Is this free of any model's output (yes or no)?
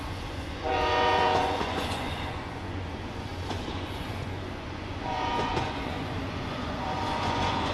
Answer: no